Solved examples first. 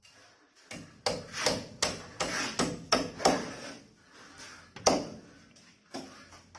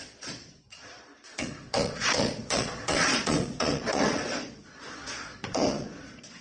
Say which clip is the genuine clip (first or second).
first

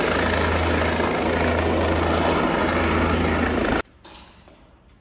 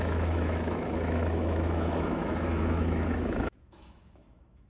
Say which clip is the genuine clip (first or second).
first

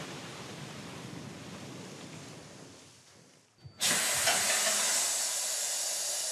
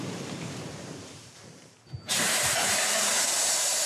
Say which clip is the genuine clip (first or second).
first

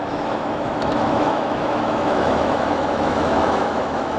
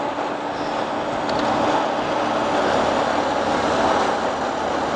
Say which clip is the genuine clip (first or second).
second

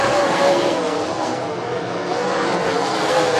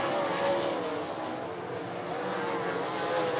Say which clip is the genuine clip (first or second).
second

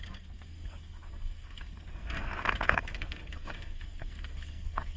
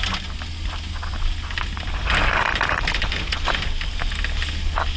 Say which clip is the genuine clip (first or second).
second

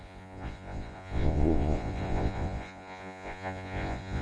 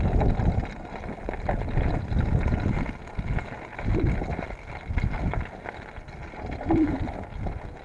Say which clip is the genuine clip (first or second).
second